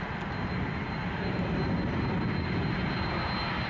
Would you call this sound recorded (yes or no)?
yes